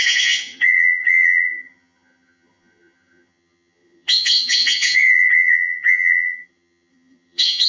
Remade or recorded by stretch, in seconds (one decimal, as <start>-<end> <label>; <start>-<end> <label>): 0.0-7.7 remade